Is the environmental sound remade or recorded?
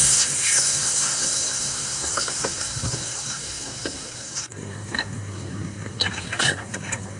remade